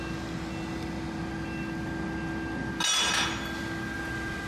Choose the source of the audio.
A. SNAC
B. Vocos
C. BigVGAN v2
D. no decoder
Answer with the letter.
D